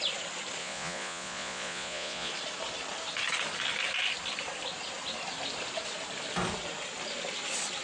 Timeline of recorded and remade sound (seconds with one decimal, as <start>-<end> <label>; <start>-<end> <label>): 0.0-0.6 recorded; 0.6-2.3 remade; 2.3-7.8 recorded